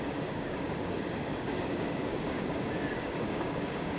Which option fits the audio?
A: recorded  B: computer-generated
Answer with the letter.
B